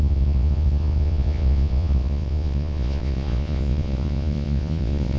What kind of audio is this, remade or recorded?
remade